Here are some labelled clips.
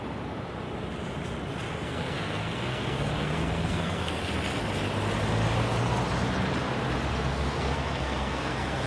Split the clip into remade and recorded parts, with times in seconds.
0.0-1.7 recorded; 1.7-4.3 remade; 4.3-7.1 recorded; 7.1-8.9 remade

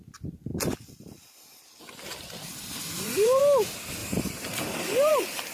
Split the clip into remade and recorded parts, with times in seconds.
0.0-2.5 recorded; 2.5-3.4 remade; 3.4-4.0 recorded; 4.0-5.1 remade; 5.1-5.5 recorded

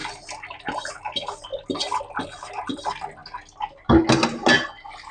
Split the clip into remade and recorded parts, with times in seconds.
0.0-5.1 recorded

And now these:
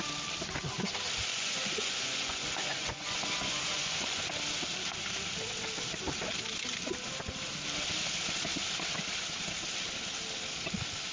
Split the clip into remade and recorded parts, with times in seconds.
0.0-1.3 recorded; 1.3-4.2 remade; 4.2-11.1 recorded